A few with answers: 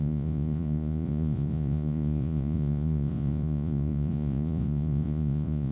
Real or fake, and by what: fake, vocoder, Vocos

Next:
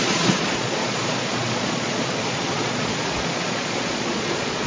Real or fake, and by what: fake, vocoder, Vocos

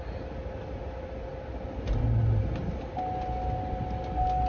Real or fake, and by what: real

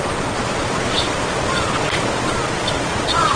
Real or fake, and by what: fake, vocoder, Vocos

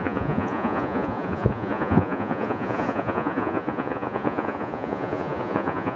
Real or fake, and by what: fake, vocoder, Vocos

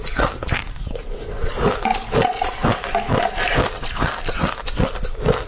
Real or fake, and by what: real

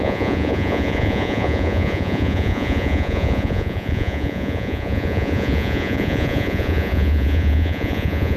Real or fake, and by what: fake, vocoder, Vocos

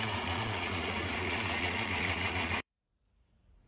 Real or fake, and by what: fake, vocoder, Vocos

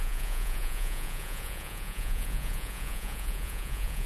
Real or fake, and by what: fake, vocoder, Vocos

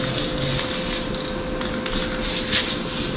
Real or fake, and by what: real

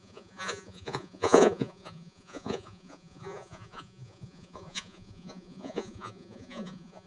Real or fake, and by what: fake, vocoder, Vocos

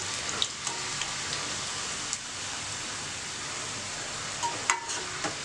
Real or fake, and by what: real